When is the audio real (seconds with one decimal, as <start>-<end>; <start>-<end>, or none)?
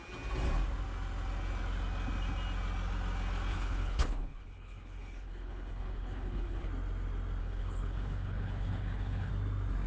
0.0-3.5; 6.7-7.4; 9.3-9.9